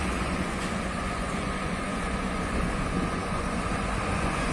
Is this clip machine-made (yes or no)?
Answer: yes